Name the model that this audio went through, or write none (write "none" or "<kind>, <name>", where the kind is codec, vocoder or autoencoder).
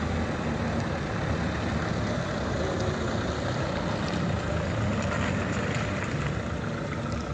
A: none